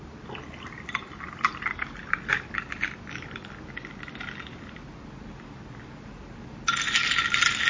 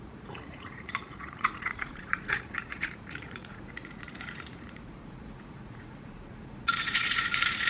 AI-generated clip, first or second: second